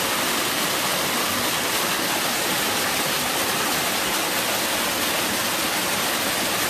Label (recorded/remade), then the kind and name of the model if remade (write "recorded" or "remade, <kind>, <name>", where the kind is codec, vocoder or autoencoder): recorded